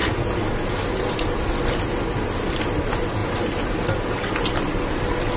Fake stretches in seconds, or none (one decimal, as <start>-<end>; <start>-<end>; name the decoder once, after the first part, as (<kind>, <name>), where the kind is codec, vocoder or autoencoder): none